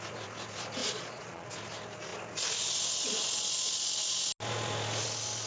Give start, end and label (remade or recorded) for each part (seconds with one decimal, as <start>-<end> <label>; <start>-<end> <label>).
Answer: 0.0-0.8 recorded; 0.8-1.5 remade; 1.5-5.5 recorded